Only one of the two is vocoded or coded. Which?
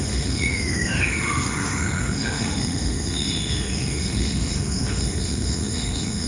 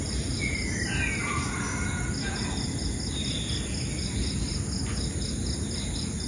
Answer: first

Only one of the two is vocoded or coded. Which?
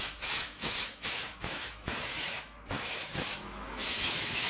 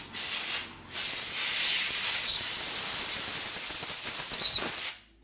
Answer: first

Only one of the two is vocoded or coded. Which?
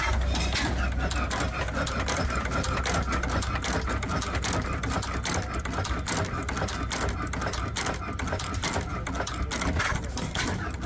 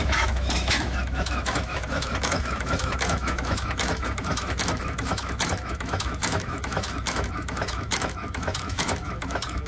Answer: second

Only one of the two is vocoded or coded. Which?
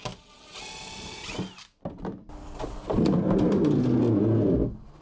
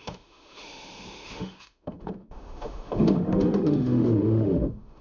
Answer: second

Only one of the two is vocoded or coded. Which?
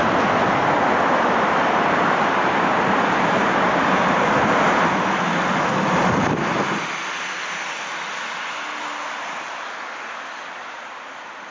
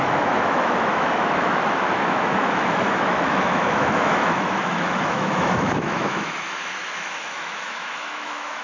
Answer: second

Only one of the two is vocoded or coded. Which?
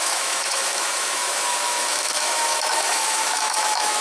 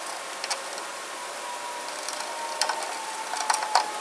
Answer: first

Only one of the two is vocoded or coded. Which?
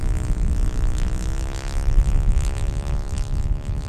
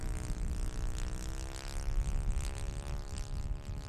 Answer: first